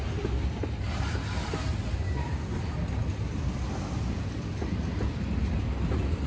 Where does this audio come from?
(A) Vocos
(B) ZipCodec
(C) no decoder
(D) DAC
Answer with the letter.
C